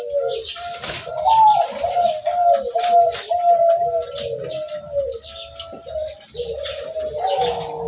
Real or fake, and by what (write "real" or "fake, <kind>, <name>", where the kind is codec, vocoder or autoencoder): real